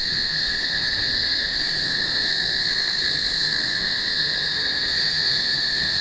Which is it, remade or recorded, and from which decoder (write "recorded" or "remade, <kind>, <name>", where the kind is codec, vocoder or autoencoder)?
remade, codec, SNAC